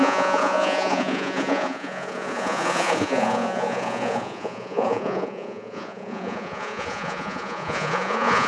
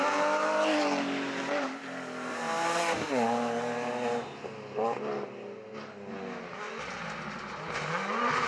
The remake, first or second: first